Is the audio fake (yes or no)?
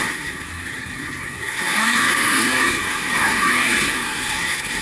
yes